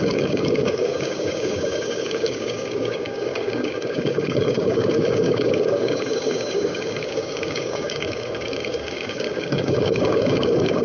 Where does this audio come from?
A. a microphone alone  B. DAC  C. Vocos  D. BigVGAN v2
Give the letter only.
B